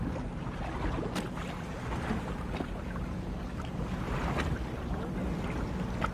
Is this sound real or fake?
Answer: real